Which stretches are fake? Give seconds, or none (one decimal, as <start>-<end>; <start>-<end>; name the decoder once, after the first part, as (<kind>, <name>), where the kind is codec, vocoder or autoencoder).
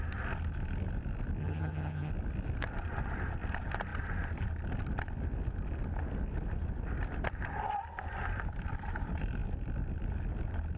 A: 1.4-2.1 (vocoder, HiFi-GAN)